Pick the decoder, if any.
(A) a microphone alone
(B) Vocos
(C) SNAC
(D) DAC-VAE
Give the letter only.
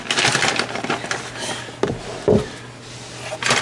A